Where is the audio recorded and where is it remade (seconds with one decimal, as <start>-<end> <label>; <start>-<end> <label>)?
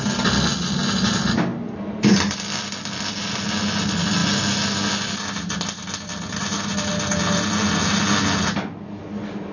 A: 0.0-9.5 recorded